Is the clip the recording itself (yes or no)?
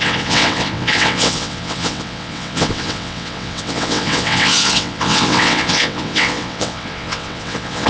no